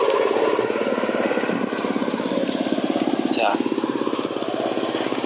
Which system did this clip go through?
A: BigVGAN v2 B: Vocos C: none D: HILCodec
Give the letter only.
C